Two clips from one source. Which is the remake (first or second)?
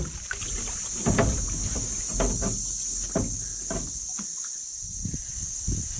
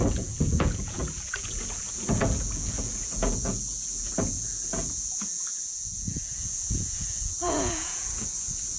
second